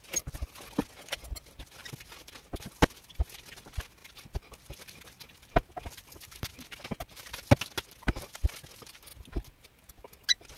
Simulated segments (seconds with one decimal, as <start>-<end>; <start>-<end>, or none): none